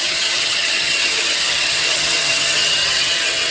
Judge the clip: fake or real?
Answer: fake